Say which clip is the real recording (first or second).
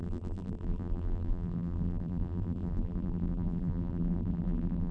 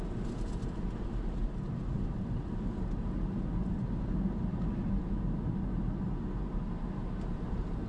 second